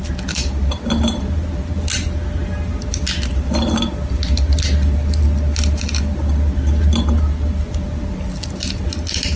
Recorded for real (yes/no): yes